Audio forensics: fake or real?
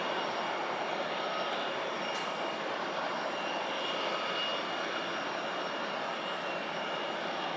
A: real